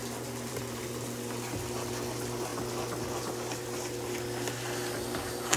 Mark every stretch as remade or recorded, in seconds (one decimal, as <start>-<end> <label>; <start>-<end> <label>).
0.0-5.6 recorded